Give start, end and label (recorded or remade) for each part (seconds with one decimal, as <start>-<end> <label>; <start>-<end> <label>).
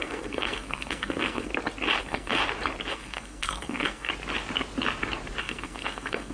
0.0-1.5 remade; 1.5-2.0 recorded; 2.0-2.4 remade; 2.4-2.9 recorded; 2.9-4.1 remade; 4.1-5.4 recorded; 5.4-6.3 remade